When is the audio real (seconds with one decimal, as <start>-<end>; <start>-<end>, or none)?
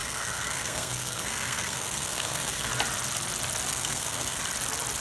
2.7-3.7; 4.4-5.0